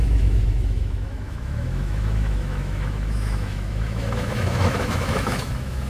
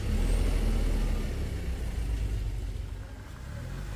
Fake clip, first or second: first